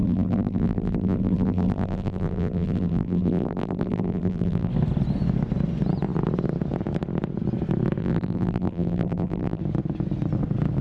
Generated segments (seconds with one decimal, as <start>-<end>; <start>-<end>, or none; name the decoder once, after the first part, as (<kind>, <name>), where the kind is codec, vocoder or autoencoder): 0.0-4.7 (vocoder, BigVGAN v2); 8.0-9.6